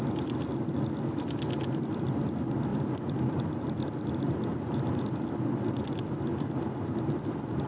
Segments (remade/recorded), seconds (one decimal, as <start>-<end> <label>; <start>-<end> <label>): 0.0-2.7 recorded; 2.7-3.9 remade; 3.9-4.5 recorded; 4.5-5.2 remade; 5.2-6.3 recorded; 6.3-7.2 remade; 7.2-7.7 recorded